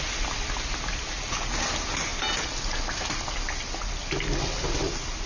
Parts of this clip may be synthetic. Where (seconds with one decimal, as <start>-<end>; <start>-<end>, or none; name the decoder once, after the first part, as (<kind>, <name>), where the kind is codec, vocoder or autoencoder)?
none